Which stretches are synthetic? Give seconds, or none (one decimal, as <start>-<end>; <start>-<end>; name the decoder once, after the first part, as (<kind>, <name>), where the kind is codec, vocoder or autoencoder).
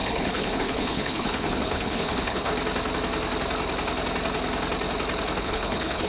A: 0.0-2.5 (codec, HILCodec); 5.4-6.1